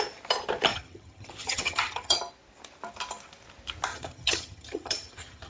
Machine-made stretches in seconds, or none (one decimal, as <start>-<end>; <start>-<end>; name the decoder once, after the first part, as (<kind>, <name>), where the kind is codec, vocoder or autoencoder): 0.7-2.2 (vocoder, HiFi-GAN); 3.9-5.5